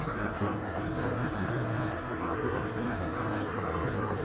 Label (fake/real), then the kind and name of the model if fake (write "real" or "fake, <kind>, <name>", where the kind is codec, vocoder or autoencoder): fake, codec, SNAC